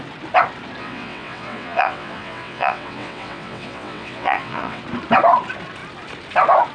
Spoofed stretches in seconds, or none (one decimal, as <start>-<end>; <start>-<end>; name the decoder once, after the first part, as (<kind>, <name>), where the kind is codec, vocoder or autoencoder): 0.8-4.8 (vocoder, WaveNeXt)